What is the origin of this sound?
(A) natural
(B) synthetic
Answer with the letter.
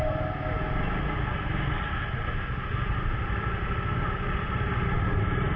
A